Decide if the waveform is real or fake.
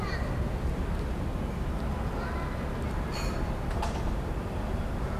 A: real